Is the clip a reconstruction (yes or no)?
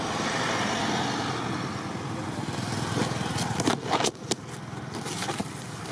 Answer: no